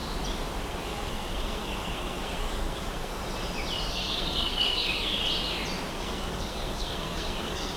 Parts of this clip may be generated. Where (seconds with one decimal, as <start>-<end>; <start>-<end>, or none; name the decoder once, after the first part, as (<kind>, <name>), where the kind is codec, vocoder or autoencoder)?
0.7-3.2 (codec, SNAC); 3.9-5.2; 5.9-7.8